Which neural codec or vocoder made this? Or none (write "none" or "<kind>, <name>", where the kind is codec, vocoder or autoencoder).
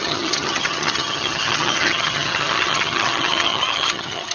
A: vocoder, HiFi-GAN